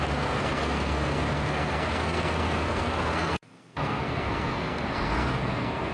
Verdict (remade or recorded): remade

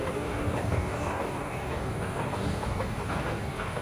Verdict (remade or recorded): remade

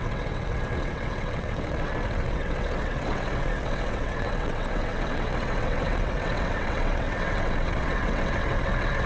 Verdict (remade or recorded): remade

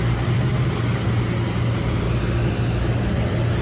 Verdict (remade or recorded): recorded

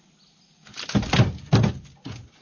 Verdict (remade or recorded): recorded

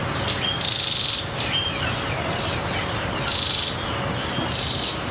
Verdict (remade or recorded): recorded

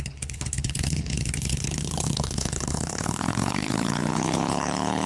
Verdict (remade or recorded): remade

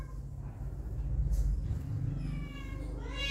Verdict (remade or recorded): recorded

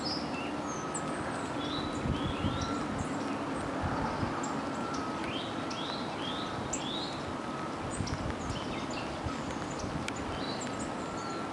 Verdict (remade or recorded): recorded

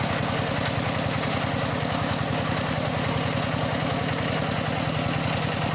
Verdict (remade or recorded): recorded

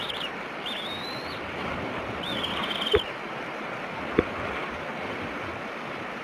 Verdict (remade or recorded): remade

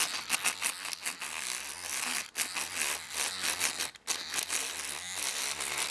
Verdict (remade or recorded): recorded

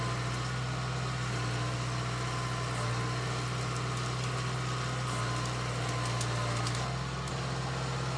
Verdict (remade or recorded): recorded